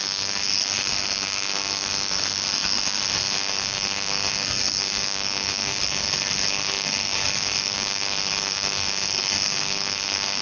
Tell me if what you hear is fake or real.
fake